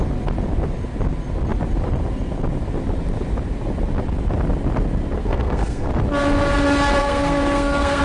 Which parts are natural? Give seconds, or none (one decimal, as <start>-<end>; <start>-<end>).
0.0-5.2; 5.9-7.0